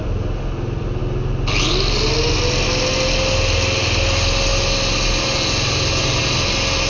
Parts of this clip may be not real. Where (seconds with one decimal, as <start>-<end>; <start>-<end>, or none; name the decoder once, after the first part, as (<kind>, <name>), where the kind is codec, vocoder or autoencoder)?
none